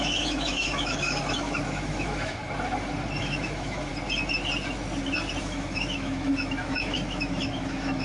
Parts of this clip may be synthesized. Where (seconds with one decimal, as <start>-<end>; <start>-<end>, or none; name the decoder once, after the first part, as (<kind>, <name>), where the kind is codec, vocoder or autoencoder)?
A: 0.0-2.4 (autoencoder, DAC-VAE); 3.2-3.9; 5.4-8.0